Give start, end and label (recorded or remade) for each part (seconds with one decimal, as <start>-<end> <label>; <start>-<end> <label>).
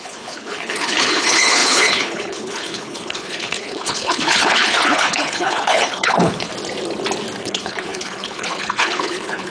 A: 0.0-6.5 remade; 6.5-7.4 recorded; 7.4-9.5 remade